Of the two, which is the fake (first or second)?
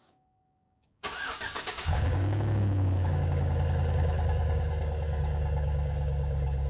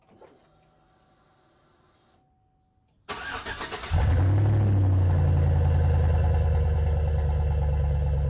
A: first